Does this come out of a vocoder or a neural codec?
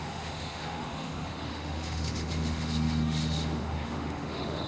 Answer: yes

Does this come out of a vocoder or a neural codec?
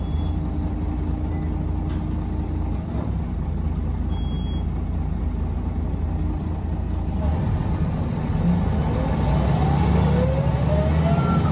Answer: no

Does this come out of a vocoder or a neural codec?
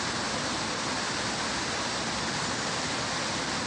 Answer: no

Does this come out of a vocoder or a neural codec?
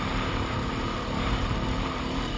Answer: yes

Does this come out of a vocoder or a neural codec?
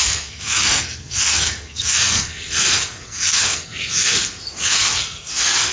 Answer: yes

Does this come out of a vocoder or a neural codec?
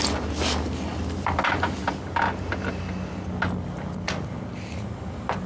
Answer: no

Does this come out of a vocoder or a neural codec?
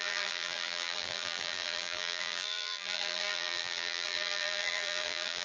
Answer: yes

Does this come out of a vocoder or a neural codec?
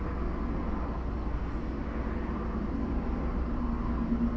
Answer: no